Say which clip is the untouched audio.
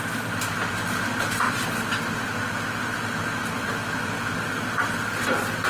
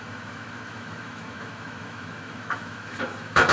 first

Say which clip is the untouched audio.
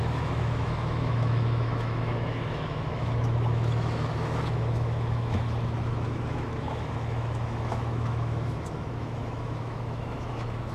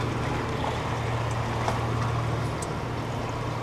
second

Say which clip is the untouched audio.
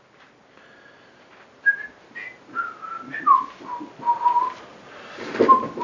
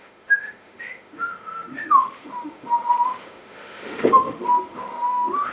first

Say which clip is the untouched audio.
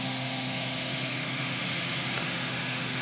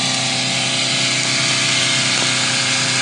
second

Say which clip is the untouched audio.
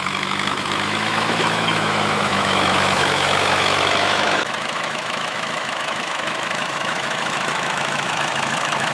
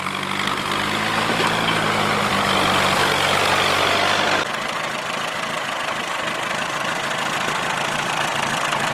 second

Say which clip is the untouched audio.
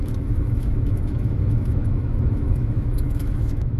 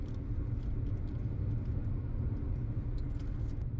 second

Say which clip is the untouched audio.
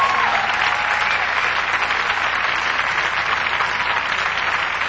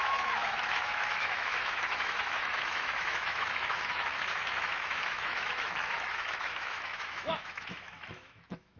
first